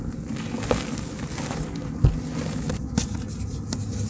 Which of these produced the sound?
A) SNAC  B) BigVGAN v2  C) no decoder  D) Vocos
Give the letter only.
C